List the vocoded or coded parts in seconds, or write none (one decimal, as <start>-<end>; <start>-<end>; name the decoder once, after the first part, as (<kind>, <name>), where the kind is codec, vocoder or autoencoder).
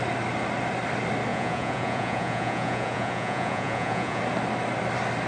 1.3-4.2 (vocoder, Vocos)